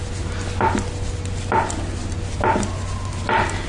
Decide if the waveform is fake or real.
real